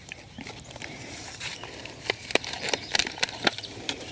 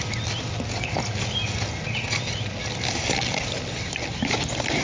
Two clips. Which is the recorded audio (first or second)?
second